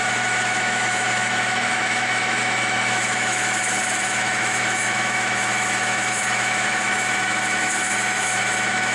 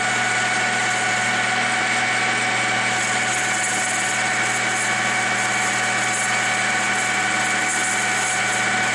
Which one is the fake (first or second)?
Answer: first